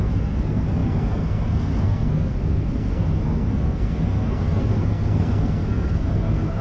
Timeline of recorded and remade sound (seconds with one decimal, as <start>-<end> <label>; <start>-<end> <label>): 0.0-6.6 remade